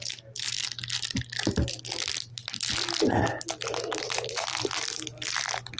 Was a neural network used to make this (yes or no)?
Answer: no